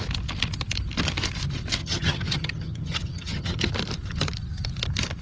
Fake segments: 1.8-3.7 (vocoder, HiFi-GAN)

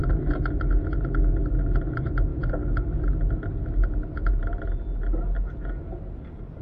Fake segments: none